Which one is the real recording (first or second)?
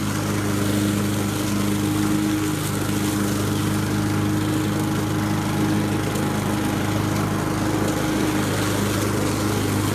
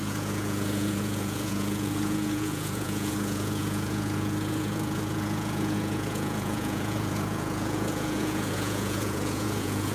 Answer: first